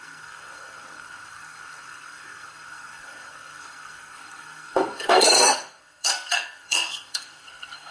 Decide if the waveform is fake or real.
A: fake